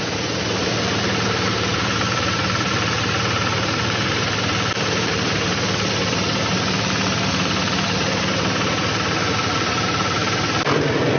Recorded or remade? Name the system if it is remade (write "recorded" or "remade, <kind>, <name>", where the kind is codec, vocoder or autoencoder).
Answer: remade, vocoder, BigVGAN v2